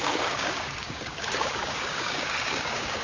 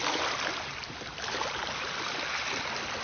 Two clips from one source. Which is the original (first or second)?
second